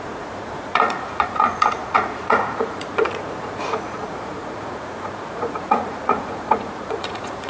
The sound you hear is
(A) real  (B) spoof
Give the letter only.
B